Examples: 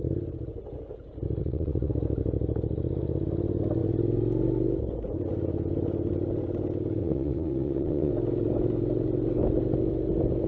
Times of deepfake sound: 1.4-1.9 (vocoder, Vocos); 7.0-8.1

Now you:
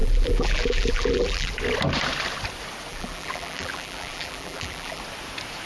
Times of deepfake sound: 0.0-1.5 (vocoder, BigVGAN v2); 2.9-5.0

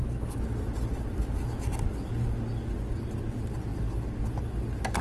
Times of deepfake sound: 0.0-0.9 (vocoder, BigVGAN v2)

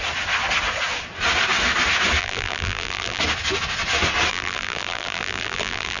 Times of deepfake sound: 2.2-3.2 (vocoder, BigVGAN v2); 4.3-6.0

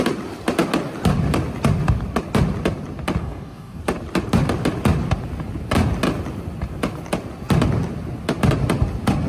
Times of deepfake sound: 3.2-3.8 (codec, DAC)

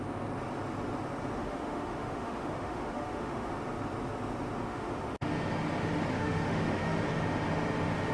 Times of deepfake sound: 1.4-3.5 (autoencoder, DAC-VAE); 4.7-5.3; 6.1-7.0

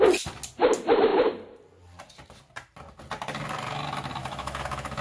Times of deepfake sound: 4.2-5.0 (autoencoder, DAC-VAE)